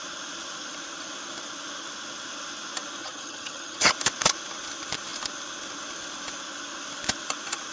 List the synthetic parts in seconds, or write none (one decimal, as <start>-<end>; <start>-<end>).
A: 3.0-3.9